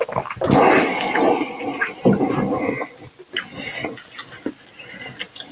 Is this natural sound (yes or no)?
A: yes